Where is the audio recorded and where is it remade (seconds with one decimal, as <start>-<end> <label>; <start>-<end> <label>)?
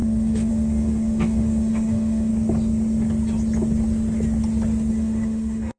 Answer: 0.0-2.3 remade; 2.3-4.9 recorded; 4.9-5.8 remade